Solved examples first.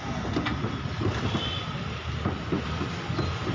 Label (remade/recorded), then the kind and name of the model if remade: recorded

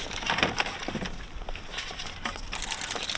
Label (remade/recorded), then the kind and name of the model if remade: recorded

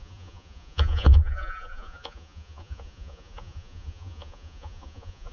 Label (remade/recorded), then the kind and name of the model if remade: remade, vocoder, Vocos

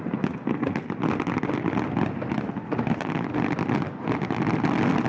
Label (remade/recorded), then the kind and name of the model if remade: recorded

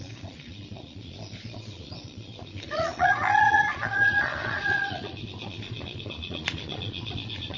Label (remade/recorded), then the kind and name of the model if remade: remade, vocoder, Vocos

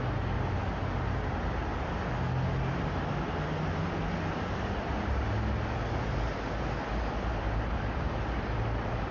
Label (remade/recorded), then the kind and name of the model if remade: recorded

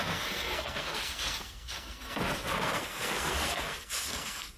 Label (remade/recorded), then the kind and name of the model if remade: remade, codec, SNAC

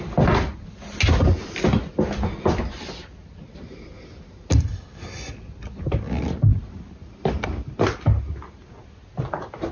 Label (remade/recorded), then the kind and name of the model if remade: recorded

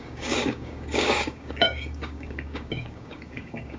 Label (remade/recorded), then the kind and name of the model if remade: remade, codec, DAC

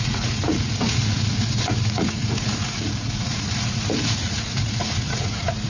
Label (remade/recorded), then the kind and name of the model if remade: remade, vocoder, Vocos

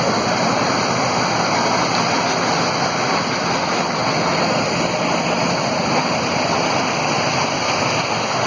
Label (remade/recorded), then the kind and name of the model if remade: recorded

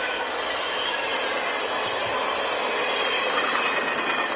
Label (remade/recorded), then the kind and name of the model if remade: recorded